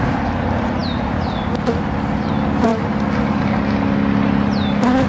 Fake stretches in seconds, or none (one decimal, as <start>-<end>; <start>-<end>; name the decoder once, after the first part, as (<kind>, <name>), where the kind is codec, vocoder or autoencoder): none